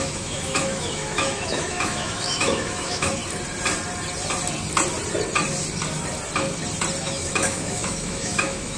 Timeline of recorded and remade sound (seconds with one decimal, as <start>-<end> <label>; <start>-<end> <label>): 0.0-3.2 remade; 3.2-7.0 recorded; 7.0-8.8 remade